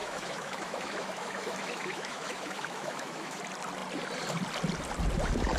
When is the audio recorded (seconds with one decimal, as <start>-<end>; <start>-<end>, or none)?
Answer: 3.4-5.6